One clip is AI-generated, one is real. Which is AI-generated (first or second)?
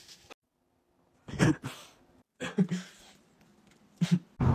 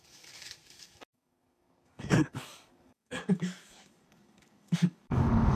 second